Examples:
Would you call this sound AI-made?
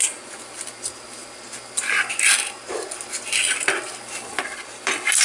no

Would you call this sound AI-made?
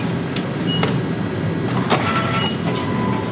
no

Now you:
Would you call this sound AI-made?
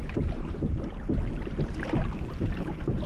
no